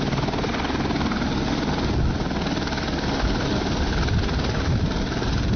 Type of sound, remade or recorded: remade